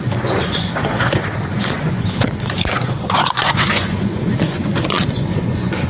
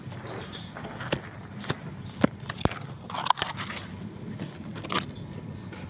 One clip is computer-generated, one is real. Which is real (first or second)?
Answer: second